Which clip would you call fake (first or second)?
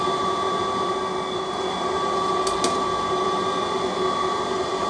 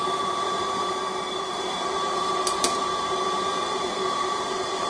second